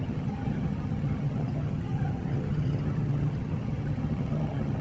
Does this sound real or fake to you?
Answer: fake